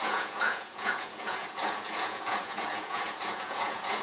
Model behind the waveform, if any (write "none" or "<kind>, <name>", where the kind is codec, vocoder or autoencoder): vocoder, Vocos